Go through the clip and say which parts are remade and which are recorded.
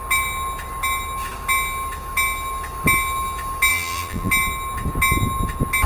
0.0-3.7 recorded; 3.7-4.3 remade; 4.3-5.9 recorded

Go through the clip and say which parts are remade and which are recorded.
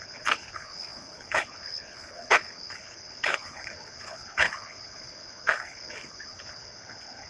0.0-7.3 remade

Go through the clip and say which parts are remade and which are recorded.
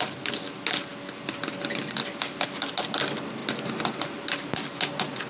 0.0-5.3 recorded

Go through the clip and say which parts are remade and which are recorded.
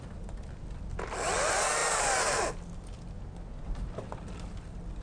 0.0-5.0 recorded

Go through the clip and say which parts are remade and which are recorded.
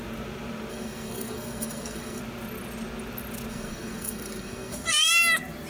0.0-0.7 recorded; 0.7-2.2 remade; 2.2-3.5 recorded; 3.5-5.1 remade; 5.1-5.7 recorded